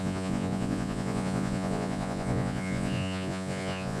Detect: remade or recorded remade